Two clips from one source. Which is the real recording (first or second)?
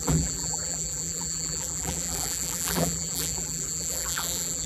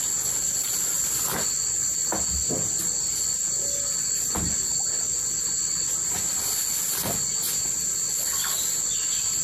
second